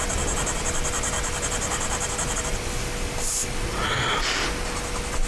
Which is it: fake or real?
real